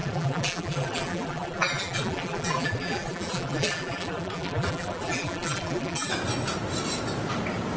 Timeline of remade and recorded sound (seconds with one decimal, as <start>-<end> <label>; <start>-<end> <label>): 0.0-6.1 remade; 6.1-7.8 recorded